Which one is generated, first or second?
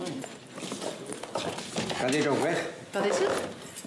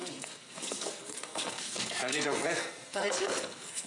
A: second